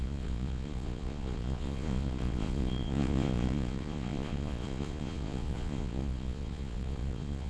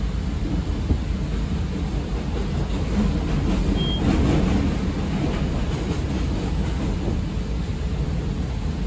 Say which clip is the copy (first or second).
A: first